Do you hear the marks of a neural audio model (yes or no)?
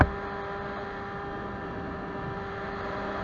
no